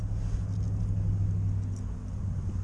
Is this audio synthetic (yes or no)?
no